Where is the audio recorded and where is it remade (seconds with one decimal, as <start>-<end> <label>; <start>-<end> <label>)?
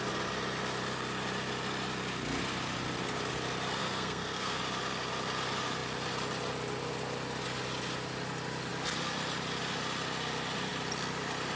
0.0-3.8 recorded; 3.8-4.6 remade; 4.6-11.6 recorded